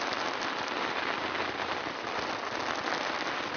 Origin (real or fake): fake